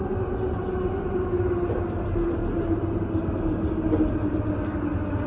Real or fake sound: real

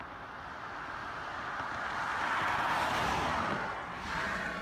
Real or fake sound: real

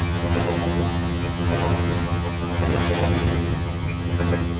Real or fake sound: fake